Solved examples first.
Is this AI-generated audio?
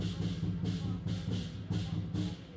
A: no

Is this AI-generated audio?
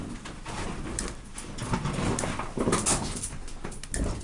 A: no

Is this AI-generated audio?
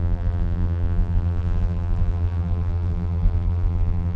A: yes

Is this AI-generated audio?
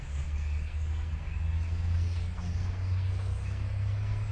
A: yes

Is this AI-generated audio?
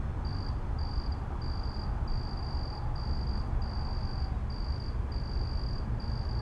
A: no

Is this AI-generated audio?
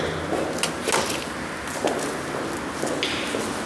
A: no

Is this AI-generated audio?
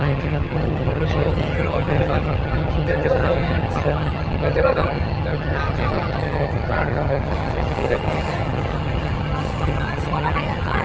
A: yes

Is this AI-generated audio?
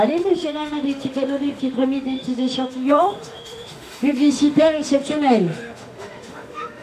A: yes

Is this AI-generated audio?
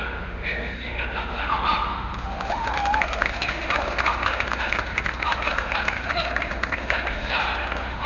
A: yes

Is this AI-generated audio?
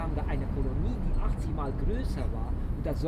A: no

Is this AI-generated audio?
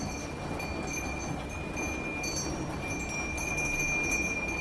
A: no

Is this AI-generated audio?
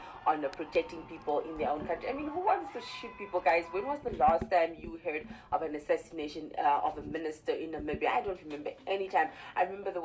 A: no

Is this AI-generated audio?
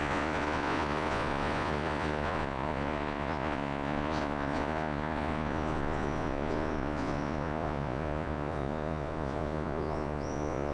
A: yes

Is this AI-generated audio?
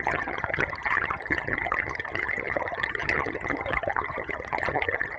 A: yes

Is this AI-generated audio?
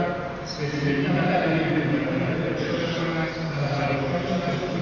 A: no